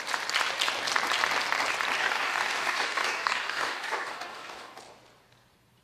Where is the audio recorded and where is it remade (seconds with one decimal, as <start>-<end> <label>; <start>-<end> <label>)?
0.0-2.0 recorded; 2.0-4.8 remade; 4.8-5.8 recorded